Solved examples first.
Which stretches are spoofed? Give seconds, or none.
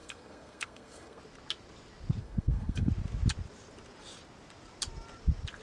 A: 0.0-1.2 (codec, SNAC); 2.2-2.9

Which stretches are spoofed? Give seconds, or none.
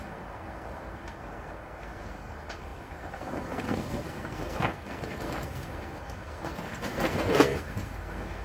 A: 0.0-8.4 (codec, SNAC)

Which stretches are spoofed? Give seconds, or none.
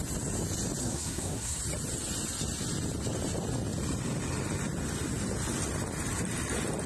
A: 0.8-1.6 (codec, SNAC)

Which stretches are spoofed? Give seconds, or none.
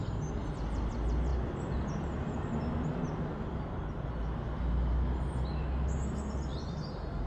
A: 6.5-7.3 (vocoder, BigVGAN v2)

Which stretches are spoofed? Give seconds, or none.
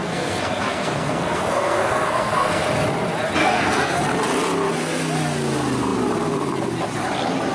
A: 0.0-2.6 (codec, SNAC); 3.4-4.0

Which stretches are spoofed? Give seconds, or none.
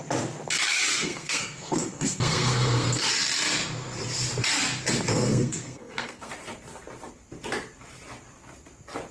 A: 0.9-3.1 (codec, SNAC); 5.1-6.3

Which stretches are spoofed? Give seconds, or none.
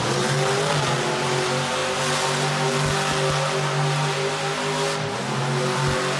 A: none